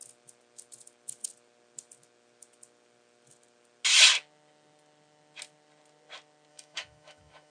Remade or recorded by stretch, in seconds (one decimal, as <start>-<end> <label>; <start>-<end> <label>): 0.0-6.5 recorded; 6.5-7.5 remade